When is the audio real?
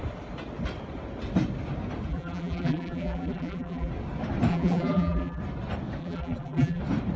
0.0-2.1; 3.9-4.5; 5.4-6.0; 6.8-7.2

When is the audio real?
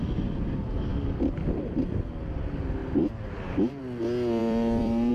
0.0-2.8; 3.8-4.4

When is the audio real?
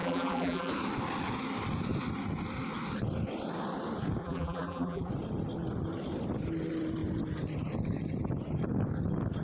0.7-4.2; 5.1-9.4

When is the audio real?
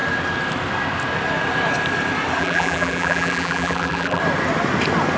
0.0-2.4; 4.2-5.2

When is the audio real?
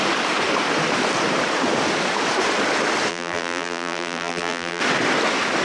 0.0-3.1; 4.8-5.6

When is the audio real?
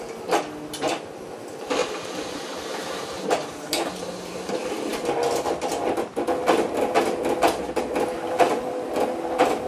0.0-1.8; 4.5-9.7